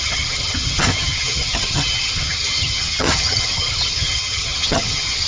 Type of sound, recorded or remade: remade